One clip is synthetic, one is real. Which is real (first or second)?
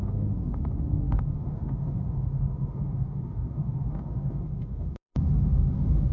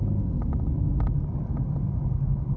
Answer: second